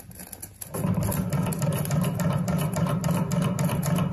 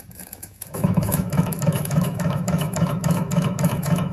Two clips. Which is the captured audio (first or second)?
first